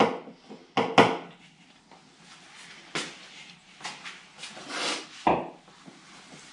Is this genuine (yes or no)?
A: yes